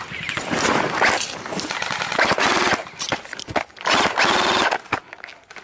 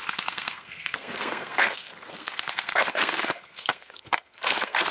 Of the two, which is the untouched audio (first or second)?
first